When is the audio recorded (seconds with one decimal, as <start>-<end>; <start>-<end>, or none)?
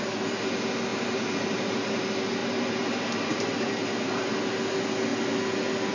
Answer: 0.0-0.9; 2.0-2.4; 4.3-5.9